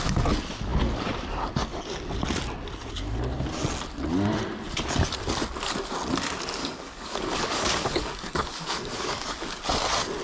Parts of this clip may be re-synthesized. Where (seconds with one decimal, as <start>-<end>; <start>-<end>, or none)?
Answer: 6.6-9.6

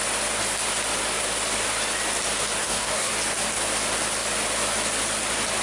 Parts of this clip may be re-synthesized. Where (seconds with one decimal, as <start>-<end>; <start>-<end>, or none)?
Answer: 2.6-3.1

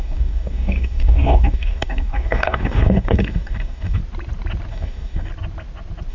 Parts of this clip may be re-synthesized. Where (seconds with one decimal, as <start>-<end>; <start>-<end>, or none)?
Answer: 0.0-4.0; 4.7-5.3

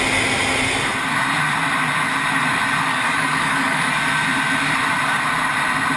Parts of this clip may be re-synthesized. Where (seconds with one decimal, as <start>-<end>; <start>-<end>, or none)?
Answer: 2.9-3.9